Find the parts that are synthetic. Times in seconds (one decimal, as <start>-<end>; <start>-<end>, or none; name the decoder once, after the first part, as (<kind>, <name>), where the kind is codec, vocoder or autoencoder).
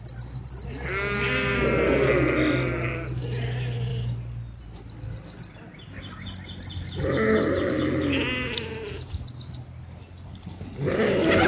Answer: none